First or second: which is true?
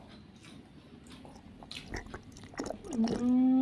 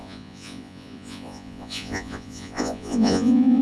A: first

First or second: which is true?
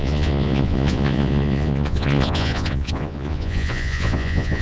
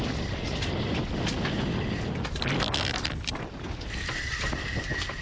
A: second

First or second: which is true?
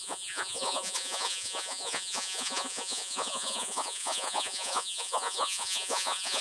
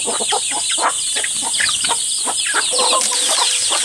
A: second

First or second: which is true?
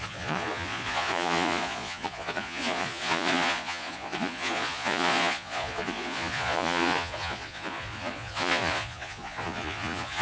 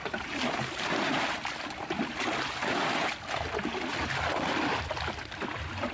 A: second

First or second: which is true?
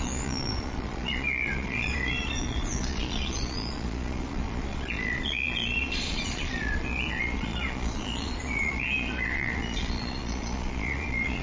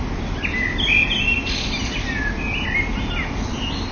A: second